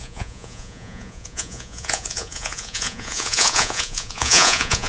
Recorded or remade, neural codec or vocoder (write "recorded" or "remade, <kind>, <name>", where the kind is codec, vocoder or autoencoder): remade, vocoder, Vocos